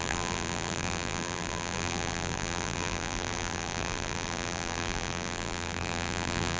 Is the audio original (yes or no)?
no